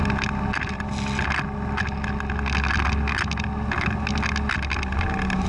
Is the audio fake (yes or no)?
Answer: no